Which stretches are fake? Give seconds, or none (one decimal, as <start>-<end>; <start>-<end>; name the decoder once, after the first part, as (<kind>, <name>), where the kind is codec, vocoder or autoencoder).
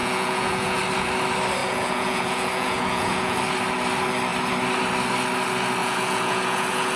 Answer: 0.0-0.8 (vocoder, Vocos); 1.6-3.4; 5.8-7.0